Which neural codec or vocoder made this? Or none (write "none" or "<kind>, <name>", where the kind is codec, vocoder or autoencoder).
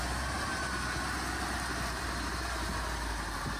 none